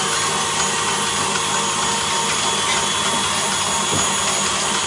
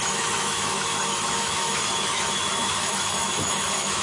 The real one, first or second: first